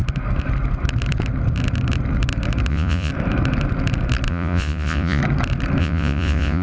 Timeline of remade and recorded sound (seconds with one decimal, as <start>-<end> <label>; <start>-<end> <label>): 0.0-2.7 recorded; 2.7-3.1 remade; 3.1-4.3 recorded; 4.3-5.2 remade; 5.2-5.8 recorded; 5.8-6.6 remade

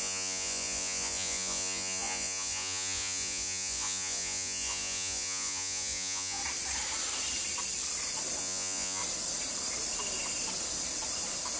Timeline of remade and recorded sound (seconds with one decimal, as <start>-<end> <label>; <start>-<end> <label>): 0.0-6.4 remade; 6.4-8.4 recorded; 8.4-9.0 remade; 9.0-11.6 recorded

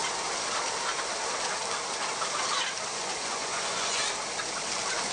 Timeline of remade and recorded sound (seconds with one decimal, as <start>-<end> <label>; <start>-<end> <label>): 0.0-2.9 recorded; 2.9-4.0 remade; 4.0-5.1 recorded